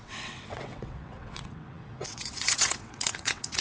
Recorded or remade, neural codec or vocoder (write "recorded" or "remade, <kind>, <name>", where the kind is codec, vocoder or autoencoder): remade, vocoder, WaveNeXt